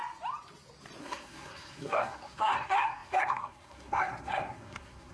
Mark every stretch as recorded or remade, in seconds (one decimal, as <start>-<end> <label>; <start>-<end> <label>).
0.0-1.0 recorded; 1.0-5.1 remade